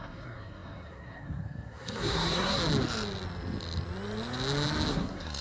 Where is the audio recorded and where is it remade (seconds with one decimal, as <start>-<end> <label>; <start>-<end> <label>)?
0.0-2.6 remade; 2.6-4.9 recorded; 4.9-5.4 remade